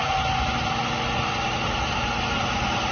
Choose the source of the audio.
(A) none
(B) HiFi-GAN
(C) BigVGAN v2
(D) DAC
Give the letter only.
A